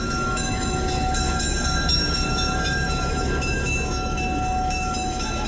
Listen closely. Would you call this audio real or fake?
fake